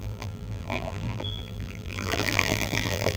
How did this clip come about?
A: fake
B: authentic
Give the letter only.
A